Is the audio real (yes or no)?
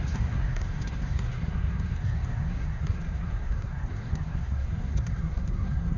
no